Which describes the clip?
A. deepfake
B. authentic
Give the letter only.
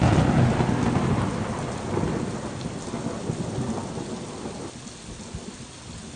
B